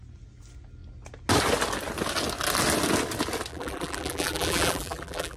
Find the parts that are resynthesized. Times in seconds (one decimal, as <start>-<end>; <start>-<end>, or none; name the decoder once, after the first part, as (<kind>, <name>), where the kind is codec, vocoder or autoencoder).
3.5-5.4 (vocoder, BigVGAN v2)